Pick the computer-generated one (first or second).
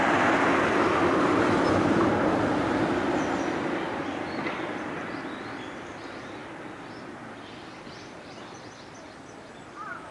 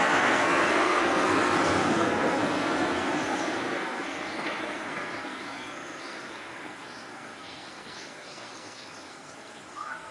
second